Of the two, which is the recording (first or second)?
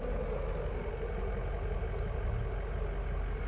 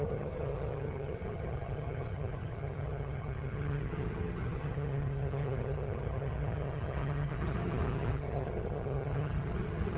first